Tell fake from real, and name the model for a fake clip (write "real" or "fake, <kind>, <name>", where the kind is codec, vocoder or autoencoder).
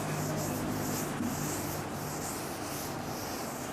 real